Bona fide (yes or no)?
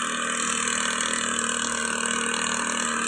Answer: yes